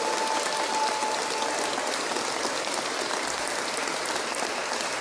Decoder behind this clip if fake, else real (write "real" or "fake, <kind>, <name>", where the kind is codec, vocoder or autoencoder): real